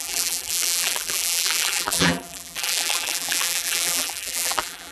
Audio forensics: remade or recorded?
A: remade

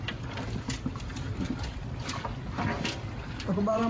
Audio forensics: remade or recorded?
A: remade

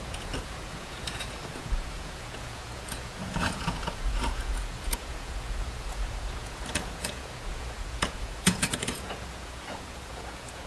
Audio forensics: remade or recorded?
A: remade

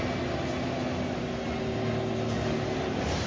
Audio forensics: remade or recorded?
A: recorded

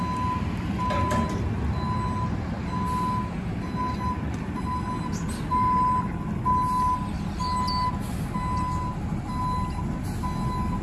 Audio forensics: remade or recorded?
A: recorded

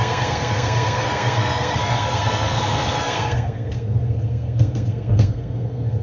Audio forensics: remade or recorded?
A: remade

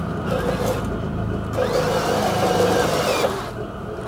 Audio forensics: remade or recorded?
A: recorded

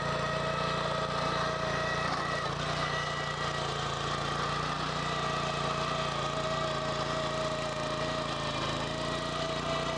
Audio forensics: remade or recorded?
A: recorded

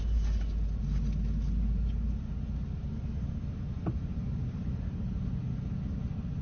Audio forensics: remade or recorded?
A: recorded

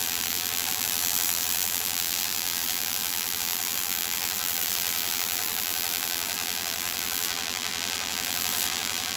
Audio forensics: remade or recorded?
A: remade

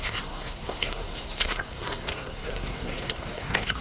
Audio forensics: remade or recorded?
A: remade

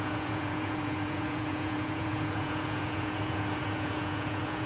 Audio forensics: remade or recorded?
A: remade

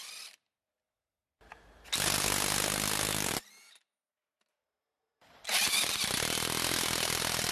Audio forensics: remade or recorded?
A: recorded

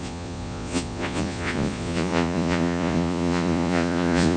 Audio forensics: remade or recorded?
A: remade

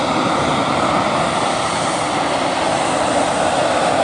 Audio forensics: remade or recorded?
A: recorded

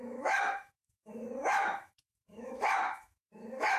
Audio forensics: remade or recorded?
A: remade